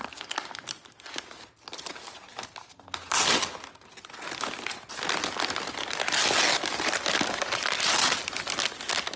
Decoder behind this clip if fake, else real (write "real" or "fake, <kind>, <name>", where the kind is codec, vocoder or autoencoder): real